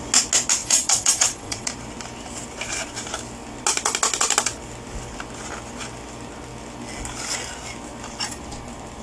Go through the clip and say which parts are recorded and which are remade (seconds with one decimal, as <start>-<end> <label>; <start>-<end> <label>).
0.0-0.6 recorded; 0.6-1.7 remade; 1.7-9.0 recorded